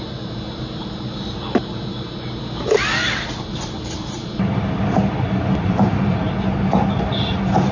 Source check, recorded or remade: remade